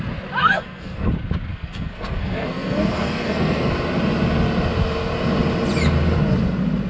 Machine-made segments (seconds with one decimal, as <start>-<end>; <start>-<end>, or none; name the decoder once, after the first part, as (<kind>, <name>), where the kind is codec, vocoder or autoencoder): 0.4-1.1 (codec, SNAC); 1.5-3.7